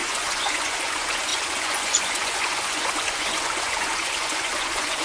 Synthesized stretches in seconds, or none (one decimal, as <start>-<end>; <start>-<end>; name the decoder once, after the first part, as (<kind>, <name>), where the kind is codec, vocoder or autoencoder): 0.0-5.0 (vocoder, Vocos)